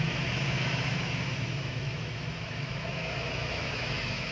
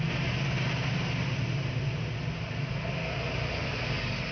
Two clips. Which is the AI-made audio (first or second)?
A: first